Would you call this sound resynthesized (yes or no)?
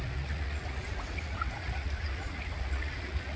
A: yes